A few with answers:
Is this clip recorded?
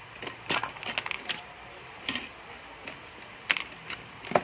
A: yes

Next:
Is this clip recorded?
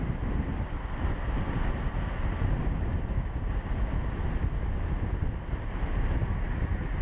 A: yes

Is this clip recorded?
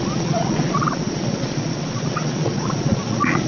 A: no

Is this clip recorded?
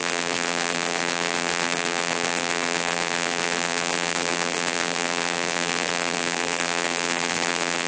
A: no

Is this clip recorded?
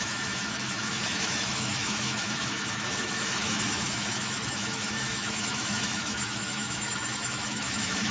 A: no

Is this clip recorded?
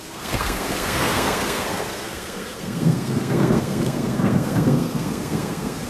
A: no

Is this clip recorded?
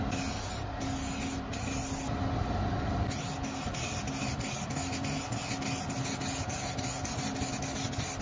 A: yes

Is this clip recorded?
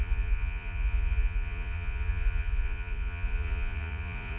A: no